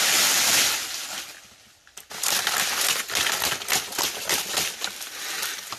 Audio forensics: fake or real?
real